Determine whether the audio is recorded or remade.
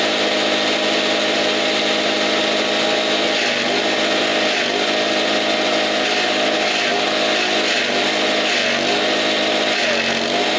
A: recorded